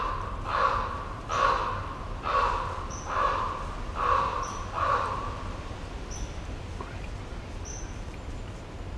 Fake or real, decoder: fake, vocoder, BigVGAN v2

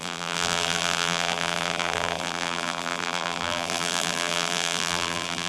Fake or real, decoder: fake, vocoder, BigVGAN v2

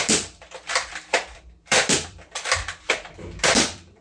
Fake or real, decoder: fake, vocoder, BigVGAN v2